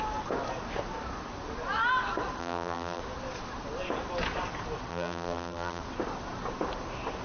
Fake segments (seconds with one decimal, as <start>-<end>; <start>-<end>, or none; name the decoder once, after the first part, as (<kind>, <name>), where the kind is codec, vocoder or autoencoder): 2.4-3.0 (vocoder, BigVGAN v2); 4.9-5.8